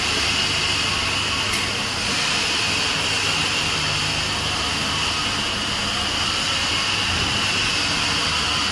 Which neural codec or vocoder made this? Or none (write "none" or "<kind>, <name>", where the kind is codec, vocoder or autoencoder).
none